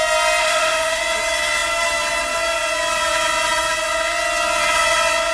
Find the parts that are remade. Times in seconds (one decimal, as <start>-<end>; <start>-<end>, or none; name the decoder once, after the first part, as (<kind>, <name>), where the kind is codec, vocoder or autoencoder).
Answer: 0.4-1.0 (autoencoder, DAC-VAE)